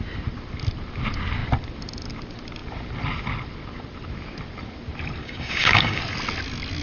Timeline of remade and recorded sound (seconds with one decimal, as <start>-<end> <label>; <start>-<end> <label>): 0.0-5.2 recorded; 5.2-6.0 remade; 6.0-6.8 recorded